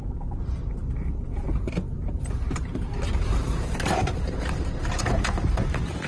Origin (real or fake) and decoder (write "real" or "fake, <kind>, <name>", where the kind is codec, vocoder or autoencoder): fake, vocoder, BigVGAN v2